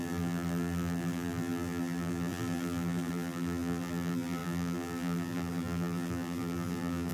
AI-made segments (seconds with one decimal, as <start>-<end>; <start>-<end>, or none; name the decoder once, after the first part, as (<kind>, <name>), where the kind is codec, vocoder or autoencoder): 0.0-7.1 (vocoder, BigVGAN v2)